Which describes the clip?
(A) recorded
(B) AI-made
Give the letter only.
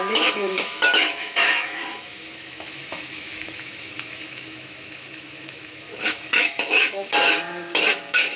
B